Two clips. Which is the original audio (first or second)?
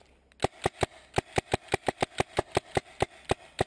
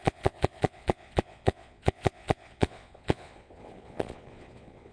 first